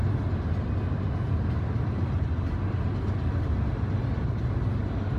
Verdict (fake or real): real